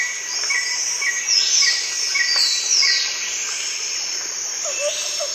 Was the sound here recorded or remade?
recorded